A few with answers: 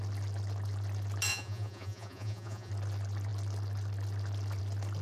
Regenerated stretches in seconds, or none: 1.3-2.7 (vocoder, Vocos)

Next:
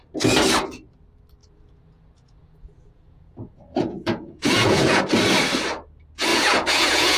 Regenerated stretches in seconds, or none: 1.4-5.0 (vocoder, Vocos); 6.3-7.2

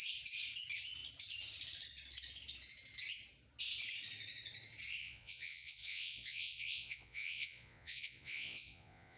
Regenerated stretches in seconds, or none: 5.0-9.2 (vocoder, Vocos)

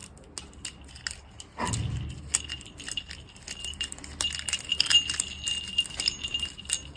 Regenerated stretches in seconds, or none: none

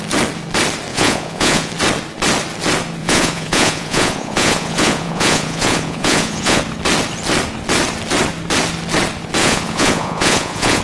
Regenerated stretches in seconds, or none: 0.9-1.7 (vocoder, Vocos); 3.0-6.6; 9.4-10.8

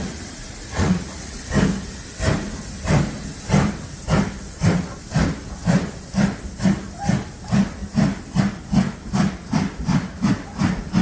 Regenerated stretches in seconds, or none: 0.0-1.4 (vocoder, Vocos)

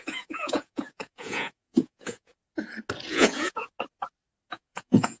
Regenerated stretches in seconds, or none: 0.0-2.3 (vocoder, Vocos); 3.1-3.7; 4.5-5.2

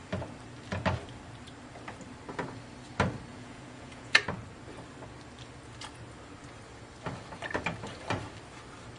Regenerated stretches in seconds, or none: 3.3-4.2 (vocoder, Vocos)